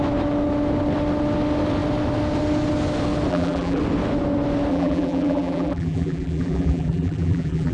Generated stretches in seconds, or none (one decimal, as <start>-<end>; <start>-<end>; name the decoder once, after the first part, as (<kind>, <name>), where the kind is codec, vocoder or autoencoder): 3.3-3.8 (vocoder, BigVGAN v2); 4.7-7.7